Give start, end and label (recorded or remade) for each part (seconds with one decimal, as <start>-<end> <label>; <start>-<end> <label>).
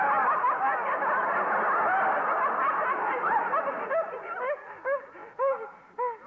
0.0-6.3 recorded